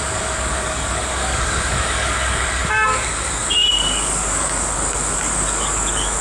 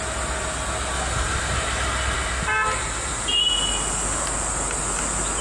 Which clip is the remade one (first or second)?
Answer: first